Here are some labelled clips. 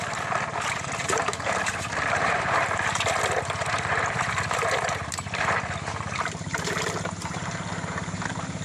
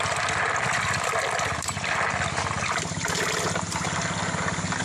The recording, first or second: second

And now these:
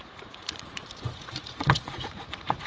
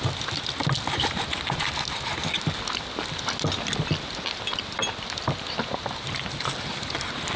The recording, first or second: second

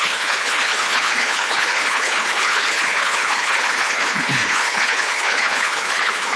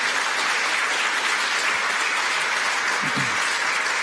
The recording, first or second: second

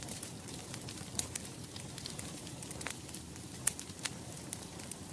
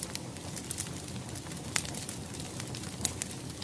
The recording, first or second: second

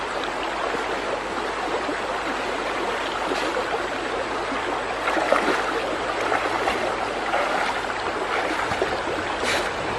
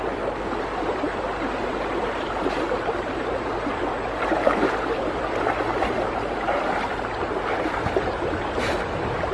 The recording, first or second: first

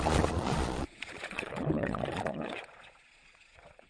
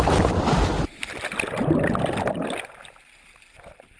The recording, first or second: second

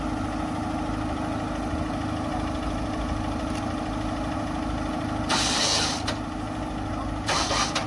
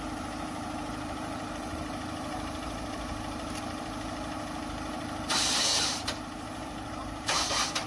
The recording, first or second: first